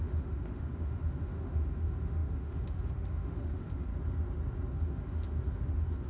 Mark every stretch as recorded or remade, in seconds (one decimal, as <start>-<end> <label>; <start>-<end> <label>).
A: 0.0-3.9 remade; 3.9-4.7 recorded; 4.7-6.1 remade